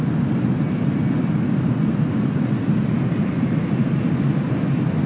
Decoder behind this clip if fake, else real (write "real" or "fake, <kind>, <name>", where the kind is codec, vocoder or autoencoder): real